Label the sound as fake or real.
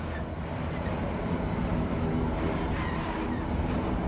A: real